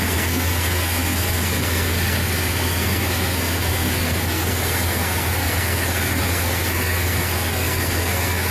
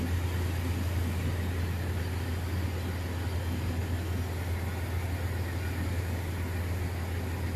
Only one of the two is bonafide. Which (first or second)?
second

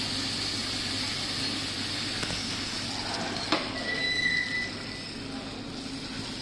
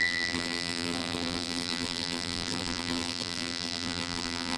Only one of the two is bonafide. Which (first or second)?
first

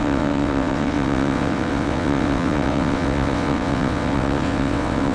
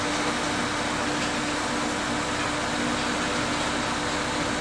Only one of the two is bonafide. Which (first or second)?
second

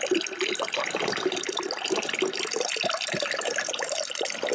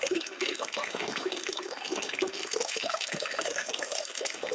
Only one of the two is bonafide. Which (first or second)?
first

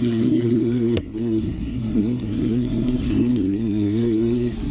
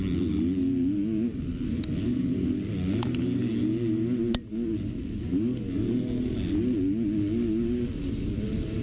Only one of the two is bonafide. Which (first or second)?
second